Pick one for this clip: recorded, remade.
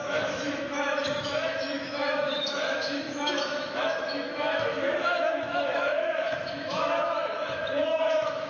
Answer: remade